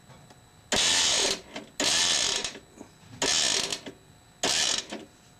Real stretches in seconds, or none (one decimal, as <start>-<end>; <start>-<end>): 0.0-5.4